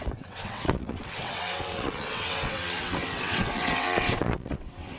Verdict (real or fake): fake